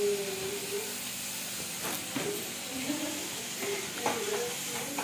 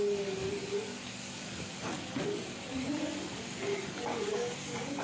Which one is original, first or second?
first